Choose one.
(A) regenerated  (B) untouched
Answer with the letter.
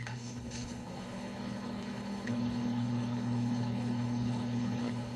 A